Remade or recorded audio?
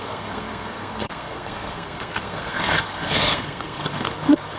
remade